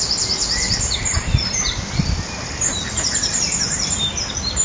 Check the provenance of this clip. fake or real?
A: fake